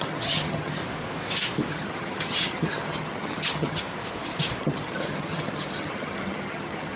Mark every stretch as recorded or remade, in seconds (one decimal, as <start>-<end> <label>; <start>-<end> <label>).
0.0-0.8 remade; 0.8-1.7 recorded; 1.7-3.8 remade; 3.8-4.6 recorded; 4.6-7.0 remade